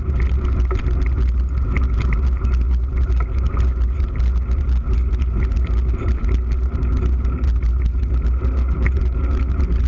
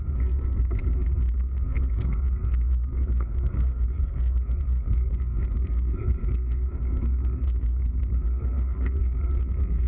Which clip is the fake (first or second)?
second